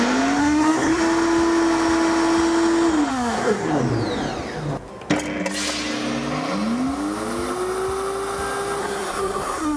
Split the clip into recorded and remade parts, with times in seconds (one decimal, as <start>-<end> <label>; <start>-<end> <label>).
0.0-0.4 recorded; 0.4-1.0 remade; 1.0-3.1 recorded; 3.1-3.8 remade; 3.8-8.8 recorded; 8.8-9.8 remade